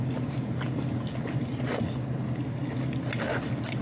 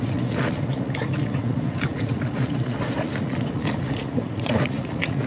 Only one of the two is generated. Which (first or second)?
second